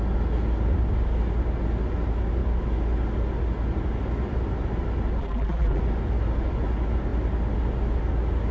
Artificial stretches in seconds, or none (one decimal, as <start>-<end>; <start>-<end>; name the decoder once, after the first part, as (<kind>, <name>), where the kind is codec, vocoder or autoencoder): 5.2-5.8 (vocoder, BigVGAN v2)